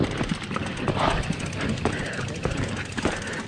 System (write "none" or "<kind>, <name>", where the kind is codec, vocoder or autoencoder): none